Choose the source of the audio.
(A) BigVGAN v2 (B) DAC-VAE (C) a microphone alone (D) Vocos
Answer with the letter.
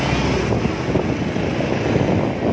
C